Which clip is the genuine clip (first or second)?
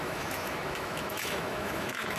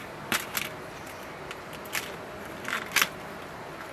second